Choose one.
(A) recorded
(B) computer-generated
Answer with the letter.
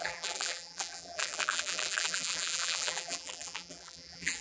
B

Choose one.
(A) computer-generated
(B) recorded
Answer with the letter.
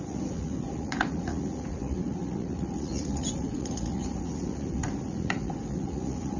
A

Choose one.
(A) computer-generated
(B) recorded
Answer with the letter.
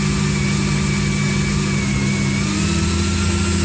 B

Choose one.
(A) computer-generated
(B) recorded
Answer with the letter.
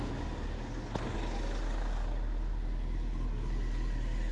B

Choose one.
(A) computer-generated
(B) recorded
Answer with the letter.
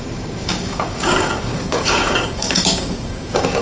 A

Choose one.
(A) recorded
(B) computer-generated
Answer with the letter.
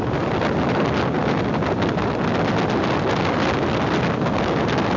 A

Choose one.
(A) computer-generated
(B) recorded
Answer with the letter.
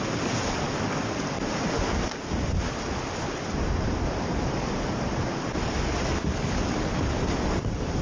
B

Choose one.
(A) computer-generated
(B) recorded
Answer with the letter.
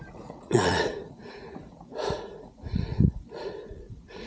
A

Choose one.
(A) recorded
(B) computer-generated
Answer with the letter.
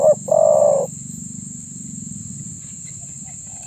A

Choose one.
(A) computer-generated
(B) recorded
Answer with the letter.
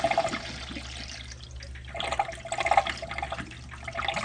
B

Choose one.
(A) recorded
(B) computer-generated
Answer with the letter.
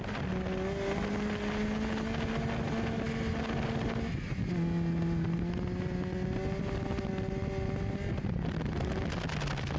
A